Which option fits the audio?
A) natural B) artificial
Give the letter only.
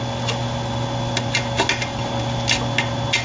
A